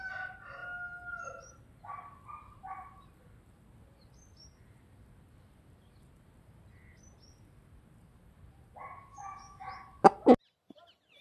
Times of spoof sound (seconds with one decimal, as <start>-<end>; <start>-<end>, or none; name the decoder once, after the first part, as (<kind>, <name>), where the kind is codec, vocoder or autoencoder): 9.1-9.7 (autoencoder, DAC-VAE)

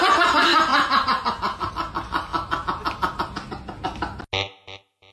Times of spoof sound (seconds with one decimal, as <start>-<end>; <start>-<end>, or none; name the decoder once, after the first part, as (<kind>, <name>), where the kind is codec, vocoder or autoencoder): none

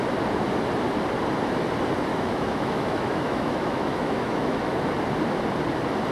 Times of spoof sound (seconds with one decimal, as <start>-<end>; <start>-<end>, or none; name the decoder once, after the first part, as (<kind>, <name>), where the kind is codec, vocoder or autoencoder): 2.1-4.9 (autoencoder, DAC-VAE)

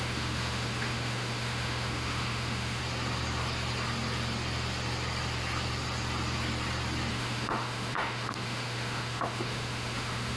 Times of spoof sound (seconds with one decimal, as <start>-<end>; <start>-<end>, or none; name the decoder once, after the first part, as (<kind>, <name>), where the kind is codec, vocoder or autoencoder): 0.0-2.8 (autoencoder, DAC-VAE); 7.1-10.4

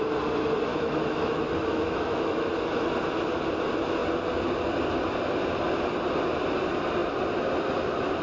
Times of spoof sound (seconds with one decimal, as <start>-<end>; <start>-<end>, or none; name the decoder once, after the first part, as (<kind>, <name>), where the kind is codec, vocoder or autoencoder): 0.7-2.5 (autoencoder, DAC-VAE)